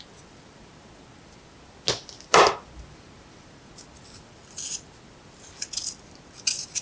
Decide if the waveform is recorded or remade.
recorded